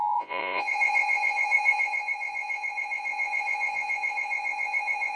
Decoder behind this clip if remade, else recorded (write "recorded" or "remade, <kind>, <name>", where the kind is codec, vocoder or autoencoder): remade, vocoder, Vocos